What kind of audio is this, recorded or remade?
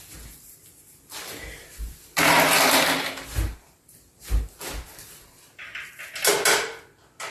recorded